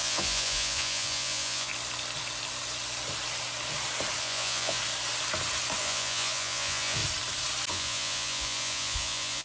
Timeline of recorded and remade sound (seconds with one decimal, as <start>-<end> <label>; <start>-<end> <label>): 0.0-1.7 remade; 1.7-4.2 recorded; 4.2-4.8 remade; 4.8-5.8 recorded; 5.8-7.0 remade; 7.0-7.7 recorded; 7.7-9.4 remade